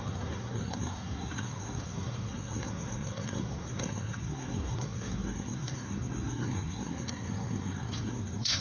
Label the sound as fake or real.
fake